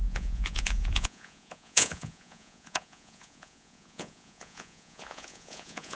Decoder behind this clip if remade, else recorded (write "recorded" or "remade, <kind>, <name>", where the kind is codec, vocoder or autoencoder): remade, vocoder, Vocos